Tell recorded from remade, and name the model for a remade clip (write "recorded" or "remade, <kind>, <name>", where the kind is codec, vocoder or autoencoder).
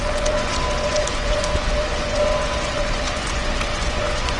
remade, vocoder, Vocos